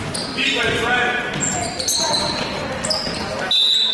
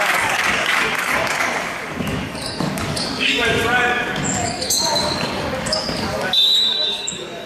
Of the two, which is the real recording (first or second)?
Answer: first